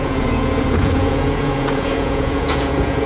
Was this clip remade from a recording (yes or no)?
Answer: yes